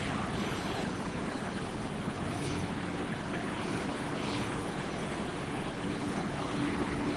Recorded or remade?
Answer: remade